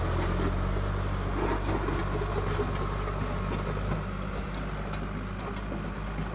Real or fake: real